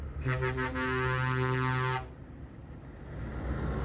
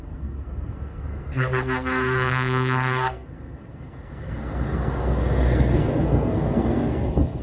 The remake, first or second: second